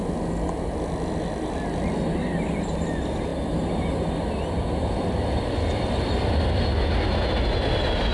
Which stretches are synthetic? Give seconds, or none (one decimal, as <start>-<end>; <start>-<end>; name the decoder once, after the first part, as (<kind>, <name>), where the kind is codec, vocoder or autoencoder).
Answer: none